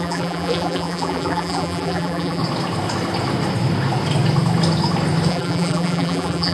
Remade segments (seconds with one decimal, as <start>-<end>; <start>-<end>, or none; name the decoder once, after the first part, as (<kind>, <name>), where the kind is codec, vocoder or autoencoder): 0.0-2.4 (vocoder, BigVGAN v2); 5.3-6.5